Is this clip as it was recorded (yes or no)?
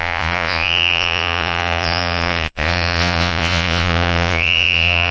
no